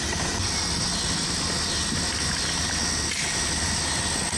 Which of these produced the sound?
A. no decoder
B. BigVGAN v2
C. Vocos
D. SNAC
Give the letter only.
A